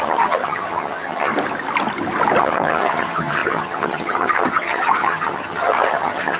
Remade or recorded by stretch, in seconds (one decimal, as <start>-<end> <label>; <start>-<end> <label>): 0.0-1.3 remade; 1.3-2.4 recorded; 2.4-6.4 remade

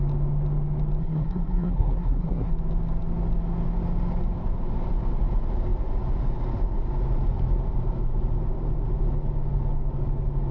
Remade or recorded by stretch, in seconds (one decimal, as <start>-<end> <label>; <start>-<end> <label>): 0.0-1.0 recorded; 1.0-2.5 remade; 2.5-10.5 recorded

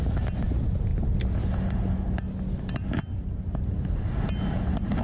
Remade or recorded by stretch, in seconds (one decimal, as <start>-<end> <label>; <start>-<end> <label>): 0.0-5.0 recorded

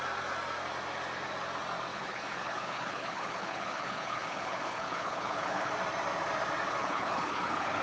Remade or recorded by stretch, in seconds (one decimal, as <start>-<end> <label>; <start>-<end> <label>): 0.0-1.9 recorded; 1.9-5.7 remade; 5.7-6.8 recorded; 6.8-7.8 remade

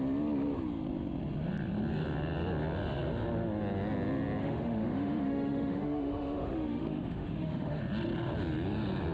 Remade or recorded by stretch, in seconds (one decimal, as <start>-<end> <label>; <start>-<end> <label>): 0.0-4.4 recorded; 4.4-7.8 remade; 7.8-9.1 recorded

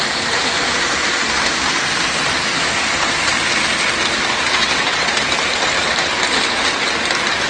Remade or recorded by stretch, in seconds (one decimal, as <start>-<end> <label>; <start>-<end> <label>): 0.0-4.6 recorded; 4.6-5.1 remade; 5.1-7.5 recorded

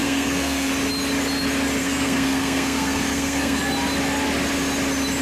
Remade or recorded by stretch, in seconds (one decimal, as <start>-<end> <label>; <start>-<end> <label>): 0.0-0.7 remade; 0.7-1.8 recorded; 1.8-3.6 remade; 3.6-5.2 recorded